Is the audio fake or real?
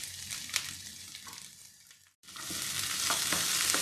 fake